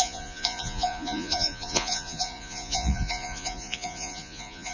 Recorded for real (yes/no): no